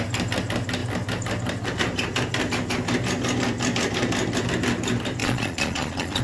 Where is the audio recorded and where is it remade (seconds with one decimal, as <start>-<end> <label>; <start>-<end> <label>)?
0.0-5.2 recorded; 5.2-6.2 remade